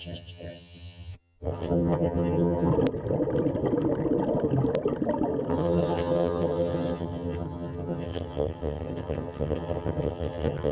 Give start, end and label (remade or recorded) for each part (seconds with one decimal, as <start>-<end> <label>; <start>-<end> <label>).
0.0-2.7 remade; 2.7-5.5 recorded; 5.5-10.7 remade